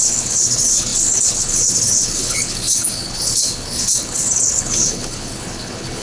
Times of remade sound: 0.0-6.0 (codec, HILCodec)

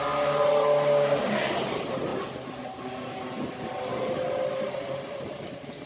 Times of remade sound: none

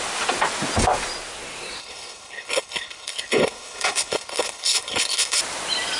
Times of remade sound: 1.8-5.4 (codec, HILCodec)

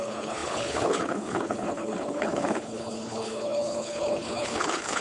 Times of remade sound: 0.0-5.0 (codec, HILCodec)

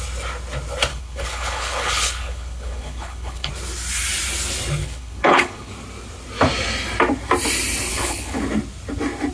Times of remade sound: 0.9-3.5 (codec, HILCodec); 4.8-5.7; 7.9-8.4

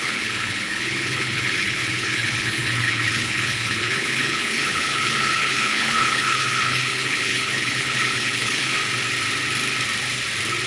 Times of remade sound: 0.0-8.8 (codec, HILCodec)

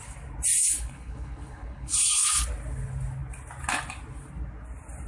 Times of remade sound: 0.6-2.3 (codec, HILCodec)